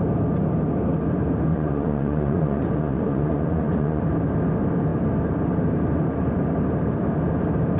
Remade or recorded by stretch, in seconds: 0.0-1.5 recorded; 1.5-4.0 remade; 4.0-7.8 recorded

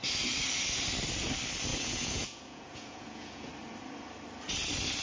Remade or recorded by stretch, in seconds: 0.0-1.7 recorded; 1.7-3.5 remade; 3.5-5.0 recorded